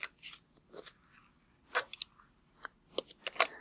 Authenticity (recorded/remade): recorded